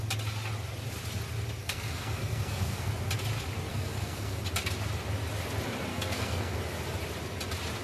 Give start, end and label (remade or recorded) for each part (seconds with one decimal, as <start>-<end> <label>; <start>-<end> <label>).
0.0-1.6 recorded; 1.6-2.9 remade; 2.9-3.7 recorded; 3.7-4.4 remade; 4.4-5.9 recorded; 5.9-6.6 remade; 6.6-7.8 recorded